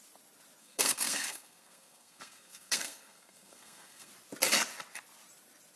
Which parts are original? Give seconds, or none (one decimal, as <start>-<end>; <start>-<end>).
0.0-0.6; 4.1-5.8